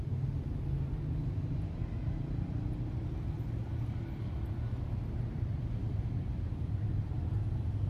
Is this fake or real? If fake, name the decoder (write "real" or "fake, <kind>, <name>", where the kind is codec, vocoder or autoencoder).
real